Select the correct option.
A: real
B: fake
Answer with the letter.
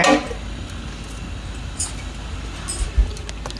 A